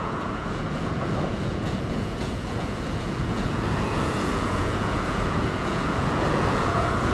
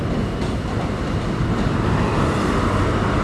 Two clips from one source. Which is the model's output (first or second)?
first